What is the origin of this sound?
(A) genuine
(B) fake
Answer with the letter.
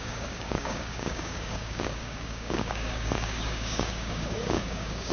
B